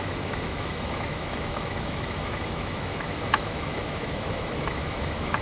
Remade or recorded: remade